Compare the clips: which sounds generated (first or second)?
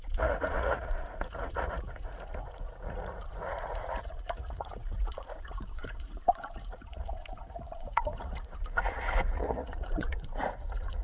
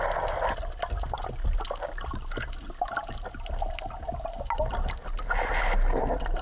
first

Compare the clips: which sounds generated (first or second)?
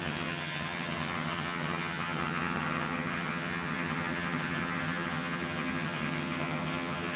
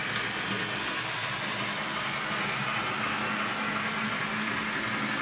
first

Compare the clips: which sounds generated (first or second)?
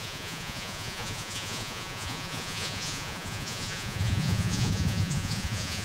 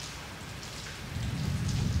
first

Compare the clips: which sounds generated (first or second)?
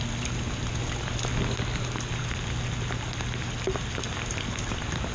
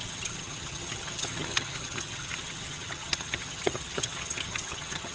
second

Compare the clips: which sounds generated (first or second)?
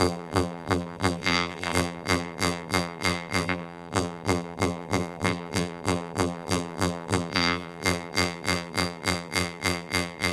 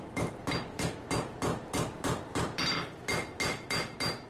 first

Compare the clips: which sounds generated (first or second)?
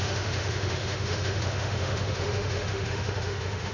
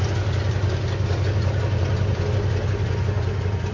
first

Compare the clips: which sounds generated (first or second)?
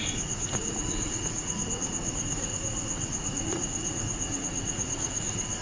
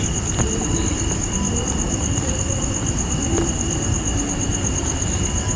first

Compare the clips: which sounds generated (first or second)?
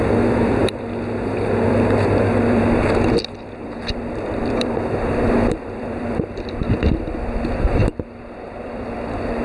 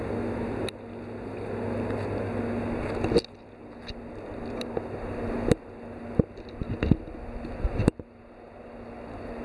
first